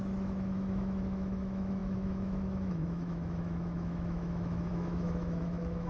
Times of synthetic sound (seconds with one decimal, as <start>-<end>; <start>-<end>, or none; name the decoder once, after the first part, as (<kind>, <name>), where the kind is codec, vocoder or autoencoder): 0.0-5.9 (autoencoder, DAC-VAE)